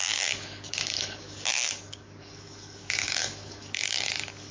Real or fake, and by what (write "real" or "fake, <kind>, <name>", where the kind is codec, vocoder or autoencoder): fake, codec, DAC